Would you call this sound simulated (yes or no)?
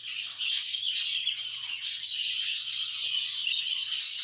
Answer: yes